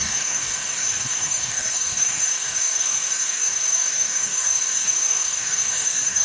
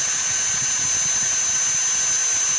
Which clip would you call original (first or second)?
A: second